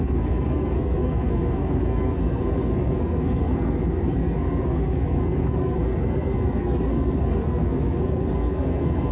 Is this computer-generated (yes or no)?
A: yes